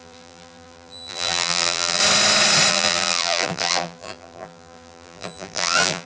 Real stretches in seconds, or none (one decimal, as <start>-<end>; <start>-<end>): 2.0-2.7